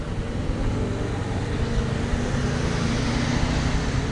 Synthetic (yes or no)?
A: no